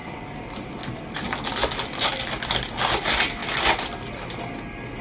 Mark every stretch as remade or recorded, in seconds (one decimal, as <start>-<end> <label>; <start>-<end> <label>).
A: 0.0-5.0 recorded